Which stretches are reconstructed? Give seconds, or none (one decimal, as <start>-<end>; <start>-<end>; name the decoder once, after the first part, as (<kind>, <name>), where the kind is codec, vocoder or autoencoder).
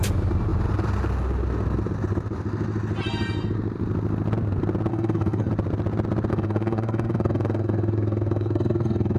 4.9-5.5 (codec, SNAC); 6.3-9.2